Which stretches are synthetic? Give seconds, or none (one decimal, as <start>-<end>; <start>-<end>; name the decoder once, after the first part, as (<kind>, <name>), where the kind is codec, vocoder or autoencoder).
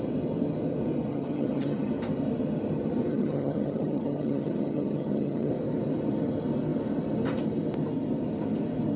1.1-1.9 (vocoder, HiFi-GAN); 3.1-5.5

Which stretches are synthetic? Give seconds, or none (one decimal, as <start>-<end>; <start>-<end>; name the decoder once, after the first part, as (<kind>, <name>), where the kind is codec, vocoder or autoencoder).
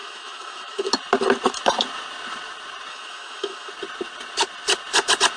0.0-0.9 (autoencoder, DAC-VAE); 2.9-3.7